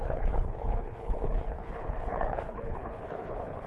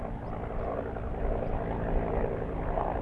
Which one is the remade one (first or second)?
first